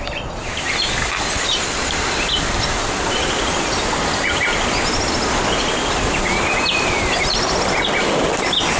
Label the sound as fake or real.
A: real